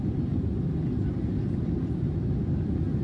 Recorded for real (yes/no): yes